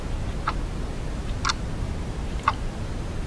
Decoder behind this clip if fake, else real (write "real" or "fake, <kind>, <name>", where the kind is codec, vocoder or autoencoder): real